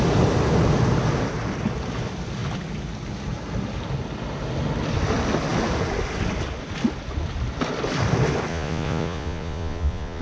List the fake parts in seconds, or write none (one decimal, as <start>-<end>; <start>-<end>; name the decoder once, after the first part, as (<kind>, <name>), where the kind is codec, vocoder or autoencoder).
8.5-10.2 (vocoder, Vocos)